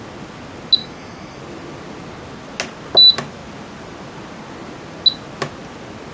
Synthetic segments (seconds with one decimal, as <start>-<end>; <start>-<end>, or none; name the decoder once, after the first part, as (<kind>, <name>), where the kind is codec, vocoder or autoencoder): 0.8-1.4 (autoencoder, DAC-VAE)